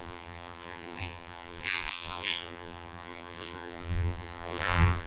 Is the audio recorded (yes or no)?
no